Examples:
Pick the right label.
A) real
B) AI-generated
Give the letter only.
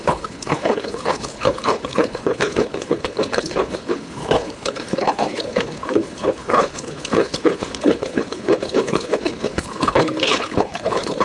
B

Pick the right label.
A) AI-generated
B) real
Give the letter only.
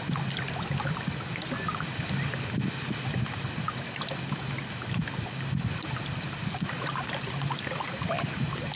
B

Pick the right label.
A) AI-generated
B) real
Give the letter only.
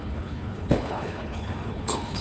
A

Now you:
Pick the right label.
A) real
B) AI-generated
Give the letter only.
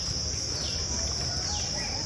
A